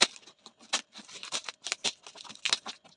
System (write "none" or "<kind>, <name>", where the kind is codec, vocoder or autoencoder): none